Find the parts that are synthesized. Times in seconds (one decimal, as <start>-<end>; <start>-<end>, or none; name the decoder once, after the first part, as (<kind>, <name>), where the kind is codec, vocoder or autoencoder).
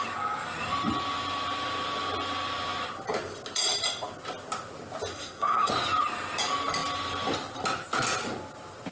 5.1-5.7 (codec, SNAC)